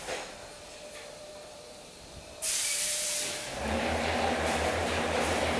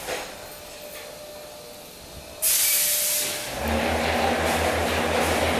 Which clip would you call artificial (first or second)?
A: first